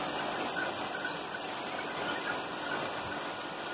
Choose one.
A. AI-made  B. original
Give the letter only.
B